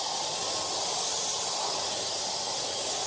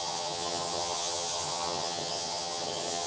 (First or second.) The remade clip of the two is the second